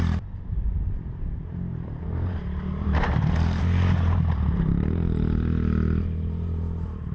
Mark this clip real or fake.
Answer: fake